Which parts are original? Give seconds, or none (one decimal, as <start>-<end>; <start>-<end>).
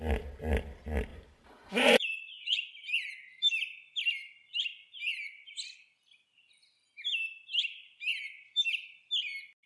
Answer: 0.0-1.1; 2.7-9.7